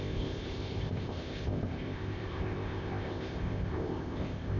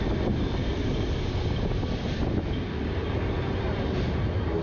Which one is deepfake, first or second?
first